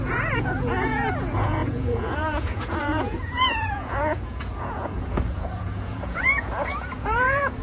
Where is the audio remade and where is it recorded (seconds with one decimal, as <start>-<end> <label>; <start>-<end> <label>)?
0.0-7.6 remade